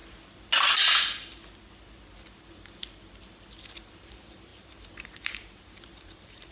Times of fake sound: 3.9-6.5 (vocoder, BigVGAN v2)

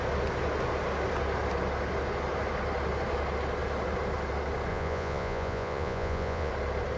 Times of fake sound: 4.7-6.5 (vocoder, Vocos)

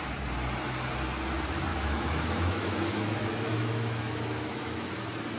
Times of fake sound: 1.7-4.9 (autoencoder, DAC-VAE)

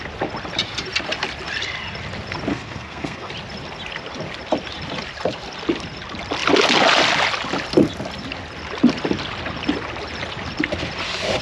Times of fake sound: 2.5-3.3 (codec, SNAC)

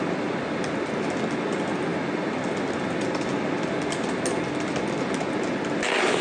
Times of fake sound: none

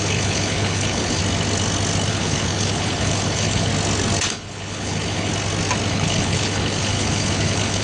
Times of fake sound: 0.0-1.2 (codec, HILCodec); 2.1-3.7; 4.3-5.3; 5.9-7.8